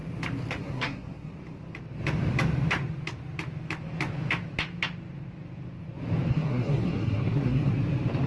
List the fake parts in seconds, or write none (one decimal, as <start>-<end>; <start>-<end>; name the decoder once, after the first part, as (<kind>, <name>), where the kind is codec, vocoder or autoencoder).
0.5-1.3 (codec, SNAC); 6.3-7.7